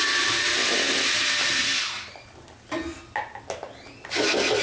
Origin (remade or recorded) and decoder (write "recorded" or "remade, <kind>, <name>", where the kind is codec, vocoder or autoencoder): recorded